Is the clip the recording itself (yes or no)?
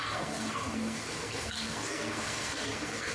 no